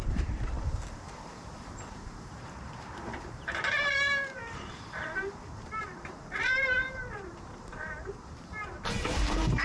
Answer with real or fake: fake